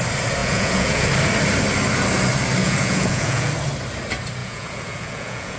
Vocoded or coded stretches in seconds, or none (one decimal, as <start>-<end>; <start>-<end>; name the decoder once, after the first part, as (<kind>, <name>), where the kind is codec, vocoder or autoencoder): 0.4-1.1 (vocoder, Vocos); 2.6-3.5; 4.4-5.6